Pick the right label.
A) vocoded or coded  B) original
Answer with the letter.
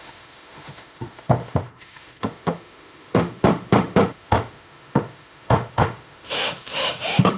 A